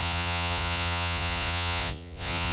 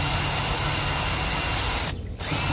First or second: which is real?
second